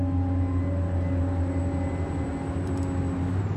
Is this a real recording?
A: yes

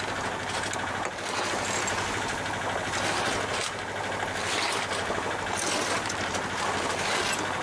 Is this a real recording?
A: yes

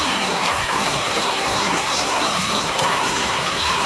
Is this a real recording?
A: no